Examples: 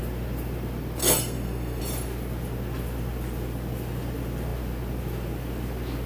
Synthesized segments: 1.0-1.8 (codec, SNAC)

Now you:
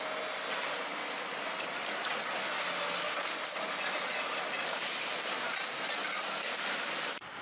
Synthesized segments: none

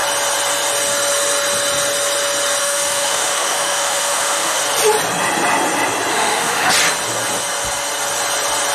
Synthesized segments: 2.6-4.6 (autoencoder, DAC-VAE); 6.1-6.7

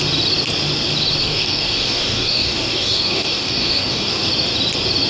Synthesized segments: 1.2-4.3 (codec, DAC)

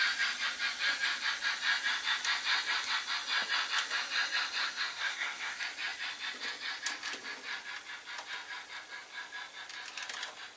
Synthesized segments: 4.6-5.6 (codec, SNAC)

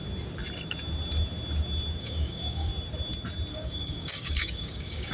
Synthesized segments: 2.0-2.7 (codec, DAC); 3.5-5.1

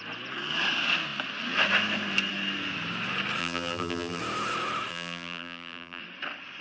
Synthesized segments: 3.4-4.2 (vocoder, BigVGAN v2); 4.9-6.0